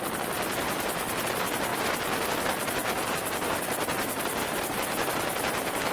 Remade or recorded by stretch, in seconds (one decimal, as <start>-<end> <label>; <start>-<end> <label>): 0.0-5.9 recorded